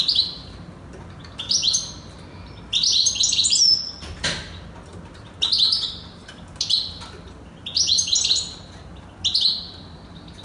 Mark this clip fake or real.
real